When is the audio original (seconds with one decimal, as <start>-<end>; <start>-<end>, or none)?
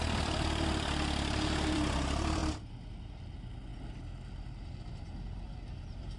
2.4-3.0; 3.7-4.5